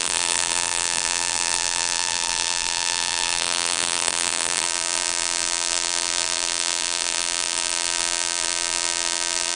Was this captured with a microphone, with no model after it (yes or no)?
no